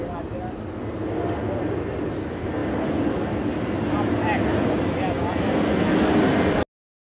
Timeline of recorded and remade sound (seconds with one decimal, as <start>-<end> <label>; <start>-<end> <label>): 0.0-7.1 recorded